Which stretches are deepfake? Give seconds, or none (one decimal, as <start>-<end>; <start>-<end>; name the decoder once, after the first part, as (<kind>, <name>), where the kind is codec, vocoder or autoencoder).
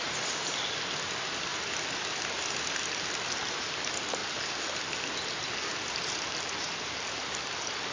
0.0-7.9 (vocoder, BigVGAN v2)